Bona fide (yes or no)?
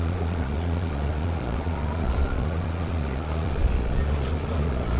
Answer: no